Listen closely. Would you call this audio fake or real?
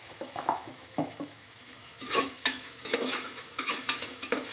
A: fake